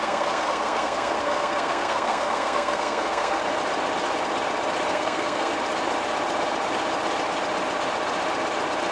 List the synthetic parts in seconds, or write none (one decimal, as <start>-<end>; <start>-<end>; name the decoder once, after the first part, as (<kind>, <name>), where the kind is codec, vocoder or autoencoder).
0.0-3.4 (codec, SNAC); 4.9-5.5